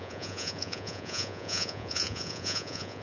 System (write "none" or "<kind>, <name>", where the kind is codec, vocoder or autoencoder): vocoder, Vocos